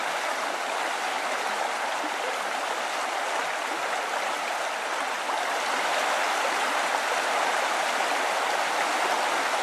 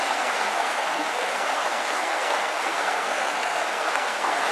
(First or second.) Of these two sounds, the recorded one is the first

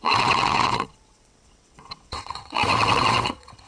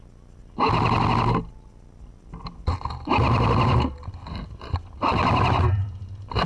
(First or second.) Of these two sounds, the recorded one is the second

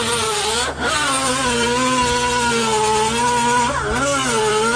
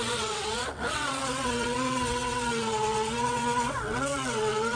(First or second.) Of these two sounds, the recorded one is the first